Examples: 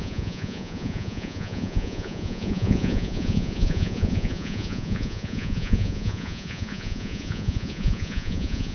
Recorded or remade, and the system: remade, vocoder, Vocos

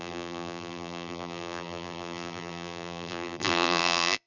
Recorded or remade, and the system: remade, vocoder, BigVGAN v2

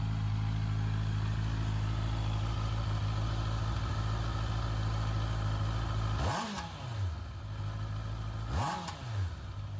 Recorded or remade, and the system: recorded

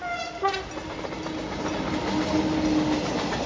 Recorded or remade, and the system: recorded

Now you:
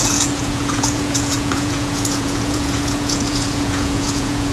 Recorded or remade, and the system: remade, vocoder, Vocos